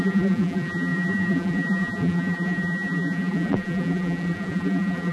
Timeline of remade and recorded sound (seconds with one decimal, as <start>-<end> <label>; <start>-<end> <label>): 0.0-5.1 remade